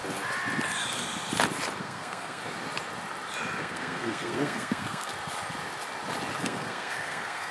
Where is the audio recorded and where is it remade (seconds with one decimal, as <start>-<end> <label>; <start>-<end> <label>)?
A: 0.0-1.8 recorded; 1.8-2.4 remade; 2.4-3.6 recorded; 3.6-5.1 remade; 5.1-6.4 recorded; 6.4-7.5 remade